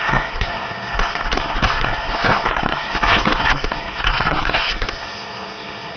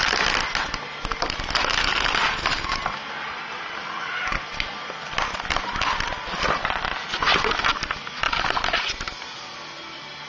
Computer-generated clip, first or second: first